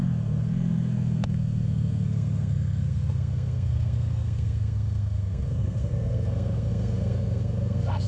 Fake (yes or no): yes